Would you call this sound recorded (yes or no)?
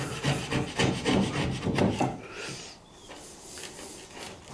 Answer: yes